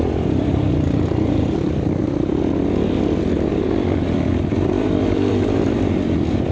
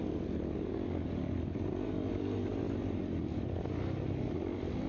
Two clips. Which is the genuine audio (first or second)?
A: second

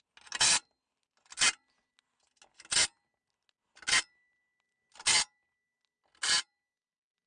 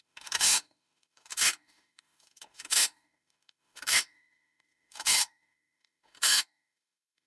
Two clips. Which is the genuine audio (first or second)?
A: first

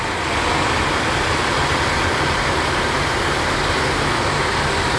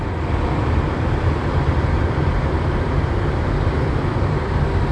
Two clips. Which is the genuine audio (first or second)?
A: first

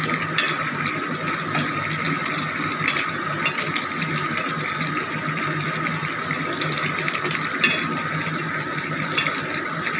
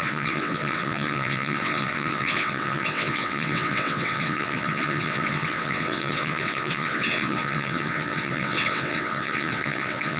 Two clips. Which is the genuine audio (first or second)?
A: first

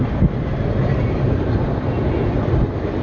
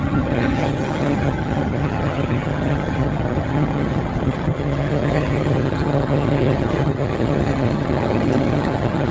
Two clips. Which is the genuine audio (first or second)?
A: first